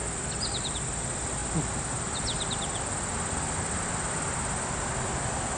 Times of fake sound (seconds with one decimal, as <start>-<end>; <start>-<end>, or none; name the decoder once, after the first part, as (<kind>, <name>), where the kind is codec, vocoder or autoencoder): none